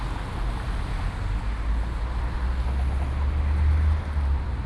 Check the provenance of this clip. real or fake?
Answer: real